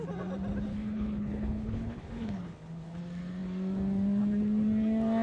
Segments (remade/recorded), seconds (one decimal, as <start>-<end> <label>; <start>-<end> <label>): 0.0-0.7 recorded; 0.7-3.0 remade; 3.0-5.2 recorded